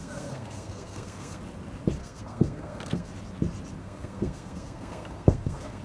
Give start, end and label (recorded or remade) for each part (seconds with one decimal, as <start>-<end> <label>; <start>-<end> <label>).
0.0-1.4 remade; 1.4-2.0 recorded; 2.0-3.1 remade; 3.1-3.8 recorded; 3.8-5.8 remade